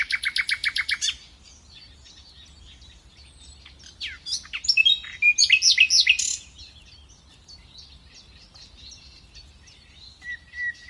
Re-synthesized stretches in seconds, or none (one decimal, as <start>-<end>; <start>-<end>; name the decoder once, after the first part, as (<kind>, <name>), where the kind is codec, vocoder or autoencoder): none